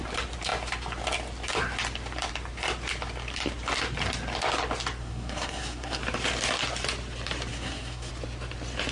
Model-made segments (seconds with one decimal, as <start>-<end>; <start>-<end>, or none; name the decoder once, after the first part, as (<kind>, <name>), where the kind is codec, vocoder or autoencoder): 5.0-6.0 (codec, SNAC); 7.5-8.1